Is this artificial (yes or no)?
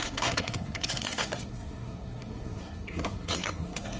yes